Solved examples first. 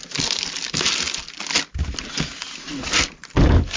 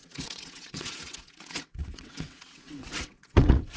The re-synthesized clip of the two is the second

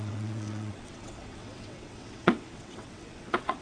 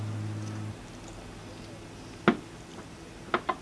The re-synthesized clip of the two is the first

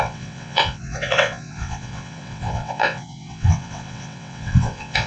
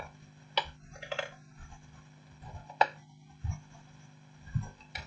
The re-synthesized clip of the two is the first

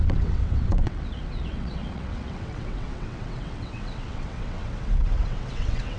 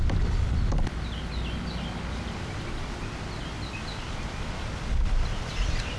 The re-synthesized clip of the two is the first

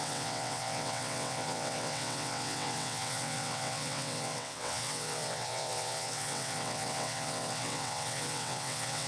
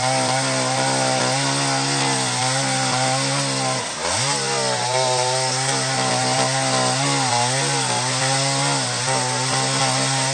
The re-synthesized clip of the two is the first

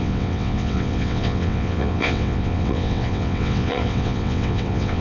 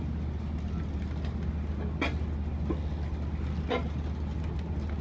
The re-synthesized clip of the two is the first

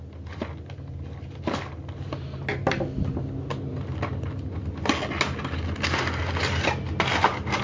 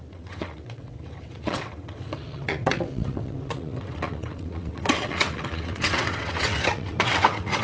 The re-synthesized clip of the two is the second